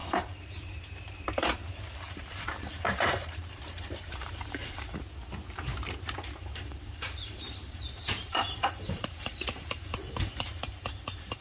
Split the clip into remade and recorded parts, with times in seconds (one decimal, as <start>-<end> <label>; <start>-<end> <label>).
0.0-5.0 remade; 5.0-6.4 recorded; 6.4-11.4 remade